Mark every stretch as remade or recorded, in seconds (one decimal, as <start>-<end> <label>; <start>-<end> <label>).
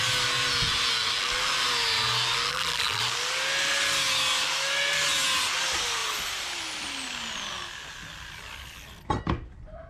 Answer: 0.0-2.5 recorded; 2.5-3.0 remade; 3.0-9.9 recorded